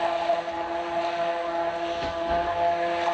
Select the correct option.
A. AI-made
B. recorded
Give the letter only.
B